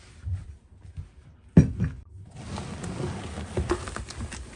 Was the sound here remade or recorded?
recorded